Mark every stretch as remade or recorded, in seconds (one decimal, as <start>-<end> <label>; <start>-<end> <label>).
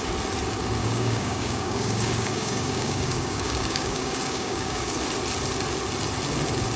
0.0-0.8 recorded; 0.8-4.9 remade; 4.9-6.8 recorded